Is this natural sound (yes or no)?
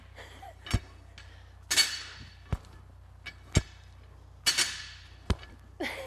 yes